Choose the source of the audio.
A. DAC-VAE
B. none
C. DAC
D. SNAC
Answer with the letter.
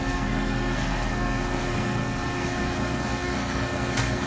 D